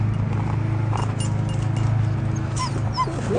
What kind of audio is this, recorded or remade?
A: recorded